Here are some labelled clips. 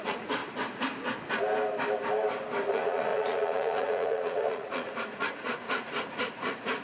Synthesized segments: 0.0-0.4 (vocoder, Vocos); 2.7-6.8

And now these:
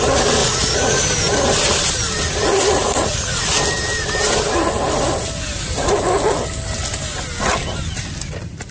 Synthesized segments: 0.4-1.0 (vocoder, Vocos); 2.8-3.5

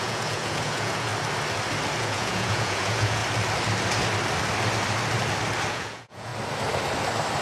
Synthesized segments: 0.0-1.1 (vocoder, Vocos); 2.0-3.2; 5.7-6.3

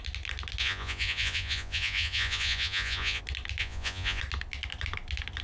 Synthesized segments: 0.6-3.2 (vocoder, Vocos); 3.6-4.2

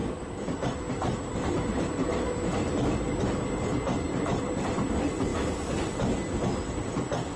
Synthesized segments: none